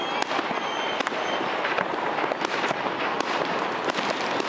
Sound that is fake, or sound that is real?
real